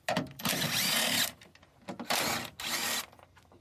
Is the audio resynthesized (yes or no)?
no